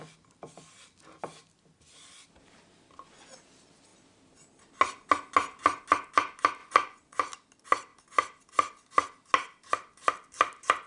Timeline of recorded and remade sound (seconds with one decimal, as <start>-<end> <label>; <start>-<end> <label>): 0.0-6.6 recorded; 6.6-7.2 remade; 7.2-10.9 recorded